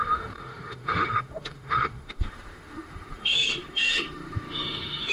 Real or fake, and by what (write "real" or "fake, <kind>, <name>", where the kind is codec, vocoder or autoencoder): fake, autoencoder, DAC-VAE